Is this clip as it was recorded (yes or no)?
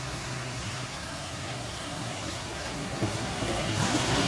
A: no